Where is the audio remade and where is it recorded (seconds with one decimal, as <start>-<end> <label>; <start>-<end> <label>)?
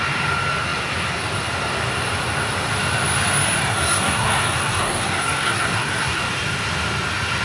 0.0-3.6 recorded; 3.6-6.2 remade; 6.2-7.4 recorded